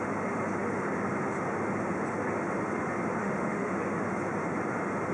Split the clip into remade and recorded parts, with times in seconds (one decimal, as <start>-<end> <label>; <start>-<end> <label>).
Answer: 0.0-3.2 recorded; 3.2-3.7 remade; 3.7-5.1 recorded